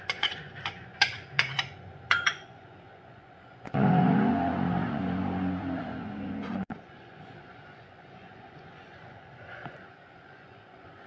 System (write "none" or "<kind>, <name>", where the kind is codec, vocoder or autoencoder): vocoder, Vocos